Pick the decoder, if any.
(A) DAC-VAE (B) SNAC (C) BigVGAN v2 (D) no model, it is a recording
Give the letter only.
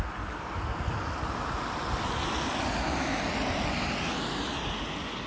D